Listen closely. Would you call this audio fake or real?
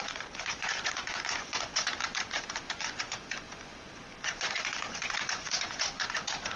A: fake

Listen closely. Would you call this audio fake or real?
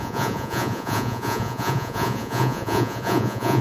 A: fake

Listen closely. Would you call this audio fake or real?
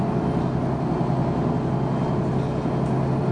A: real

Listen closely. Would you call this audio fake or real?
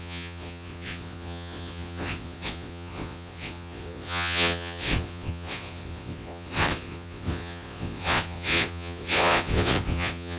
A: fake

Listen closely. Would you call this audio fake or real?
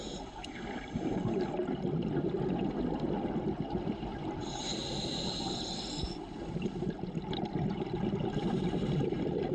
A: real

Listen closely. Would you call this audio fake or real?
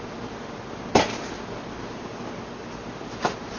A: real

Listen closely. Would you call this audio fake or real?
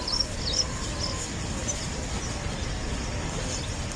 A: real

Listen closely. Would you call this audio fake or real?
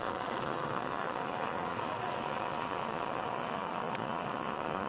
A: fake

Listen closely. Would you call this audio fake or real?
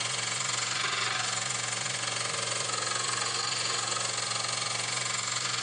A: fake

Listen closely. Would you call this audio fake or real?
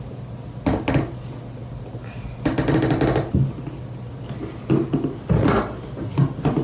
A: real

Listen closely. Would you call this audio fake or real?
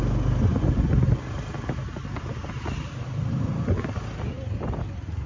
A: real